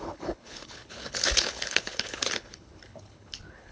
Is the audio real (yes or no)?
no